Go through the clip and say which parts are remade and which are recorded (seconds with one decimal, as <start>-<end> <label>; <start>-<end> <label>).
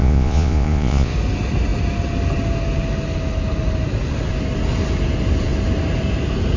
0.0-1.1 remade; 1.1-6.6 recorded